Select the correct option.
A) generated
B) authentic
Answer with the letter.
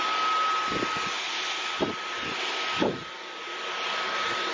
B